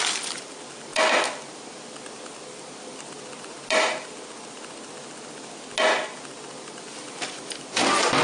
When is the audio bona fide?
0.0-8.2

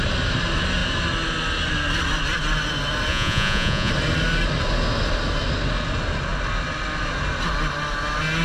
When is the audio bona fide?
0.0-3.1; 3.9-8.4

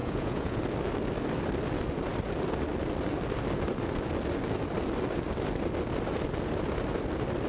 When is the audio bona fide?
0.6-7.5